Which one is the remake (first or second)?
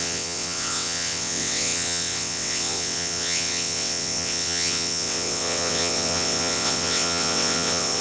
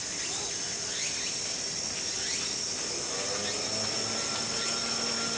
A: first